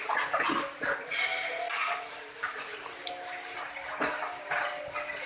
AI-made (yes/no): no